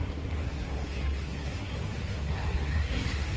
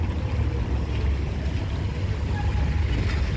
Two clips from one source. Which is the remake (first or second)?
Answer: first